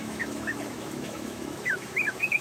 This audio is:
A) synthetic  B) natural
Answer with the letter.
A